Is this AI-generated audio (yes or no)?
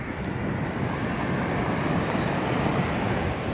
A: no